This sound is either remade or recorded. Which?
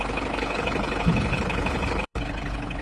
remade